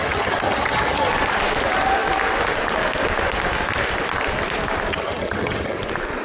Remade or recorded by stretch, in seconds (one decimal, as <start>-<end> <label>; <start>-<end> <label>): 0.0-1.1 remade; 1.1-4.9 recorded; 4.9-5.8 remade; 5.8-6.2 recorded